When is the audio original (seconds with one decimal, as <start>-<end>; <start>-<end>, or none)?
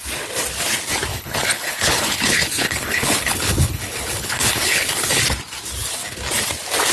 0.0-1.1; 5.2-6.9